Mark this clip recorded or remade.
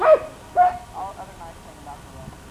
recorded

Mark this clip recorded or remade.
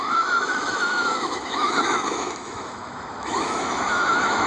remade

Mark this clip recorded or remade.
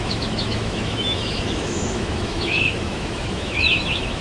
remade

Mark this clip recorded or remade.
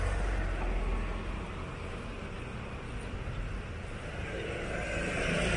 recorded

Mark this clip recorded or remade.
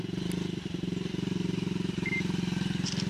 recorded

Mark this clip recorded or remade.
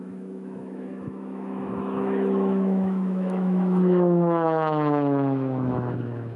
remade